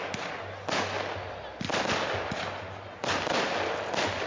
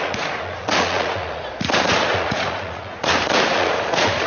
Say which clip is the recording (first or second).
first